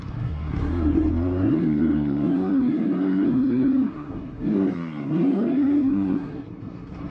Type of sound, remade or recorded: remade